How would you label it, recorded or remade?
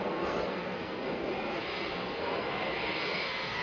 remade